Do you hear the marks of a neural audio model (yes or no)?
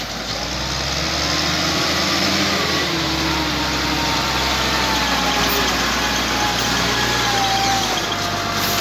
no